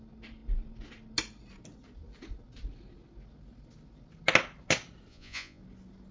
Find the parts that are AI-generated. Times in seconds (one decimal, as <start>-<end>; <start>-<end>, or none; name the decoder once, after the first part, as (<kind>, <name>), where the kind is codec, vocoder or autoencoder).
5.1-5.6 (vocoder, Vocos)